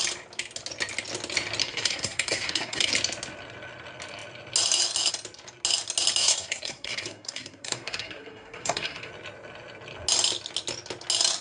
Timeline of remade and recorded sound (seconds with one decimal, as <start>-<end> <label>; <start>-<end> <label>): 0.0-1.6 recorded; 1.6-2.9 remade; 2.9-6.2 recorded; 6.2-9.1 remade; 9.1-11.4 recorded

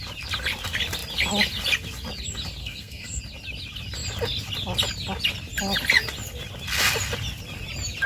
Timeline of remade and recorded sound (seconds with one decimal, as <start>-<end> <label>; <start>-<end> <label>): 0.0-2.6 recorded; 2.6-3.2 remade; 3.2-8.1 recorded